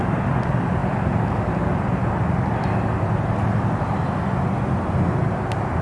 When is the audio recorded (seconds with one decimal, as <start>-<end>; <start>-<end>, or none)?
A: 0.0-5.8